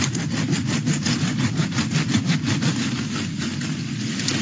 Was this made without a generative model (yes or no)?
no